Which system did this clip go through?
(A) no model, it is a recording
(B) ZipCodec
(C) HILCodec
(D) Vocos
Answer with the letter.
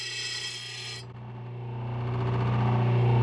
A